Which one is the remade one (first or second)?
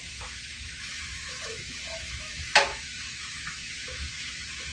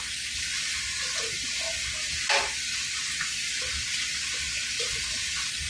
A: first